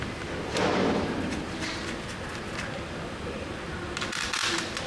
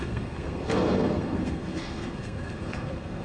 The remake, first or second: second